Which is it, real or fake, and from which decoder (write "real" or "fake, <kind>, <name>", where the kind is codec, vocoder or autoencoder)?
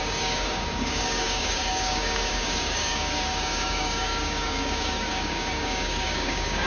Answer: fake, codec, DAC